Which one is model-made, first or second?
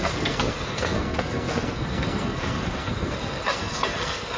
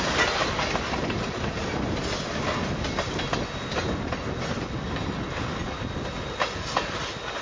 first